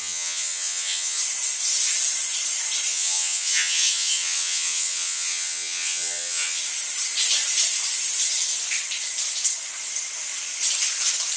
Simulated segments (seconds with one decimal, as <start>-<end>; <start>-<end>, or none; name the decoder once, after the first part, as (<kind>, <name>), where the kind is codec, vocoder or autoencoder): 0.0-1.2 (vocoder, HiFi-GAN); 2.9-6.6